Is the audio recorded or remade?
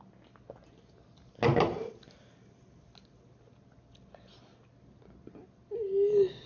recorded